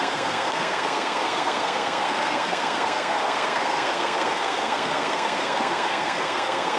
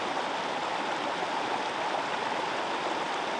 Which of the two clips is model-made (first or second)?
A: first